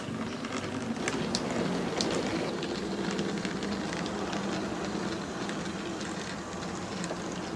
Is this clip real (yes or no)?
yes